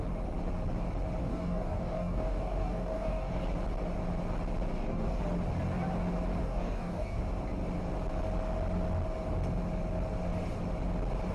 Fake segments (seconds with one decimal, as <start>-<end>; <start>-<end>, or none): 1.2-3.4; 4.7-5.2; 6.4-7.2